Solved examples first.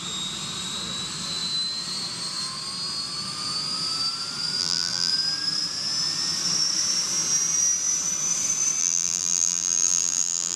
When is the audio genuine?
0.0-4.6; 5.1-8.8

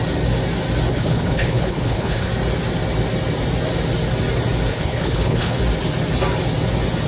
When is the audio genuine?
0.0-0.9; 2.3-4.7; 5.6-7.1

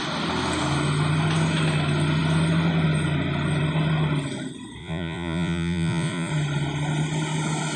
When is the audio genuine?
0.0-4.8; 6.3-7.8

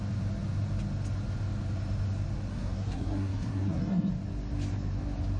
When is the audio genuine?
0.0-2.5; 4.1-5.4

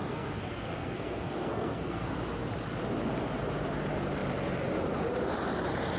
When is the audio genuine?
2.2-6.0